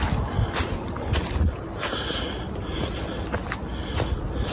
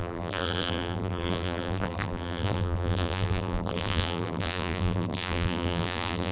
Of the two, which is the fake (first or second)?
second